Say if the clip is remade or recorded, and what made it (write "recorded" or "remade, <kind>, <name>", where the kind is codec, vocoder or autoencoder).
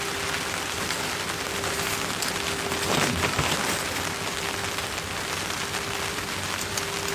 recorded